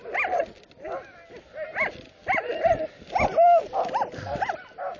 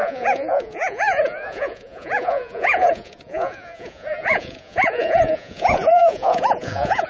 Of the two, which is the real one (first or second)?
first